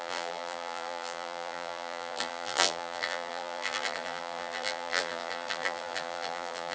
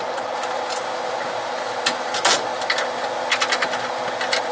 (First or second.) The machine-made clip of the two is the first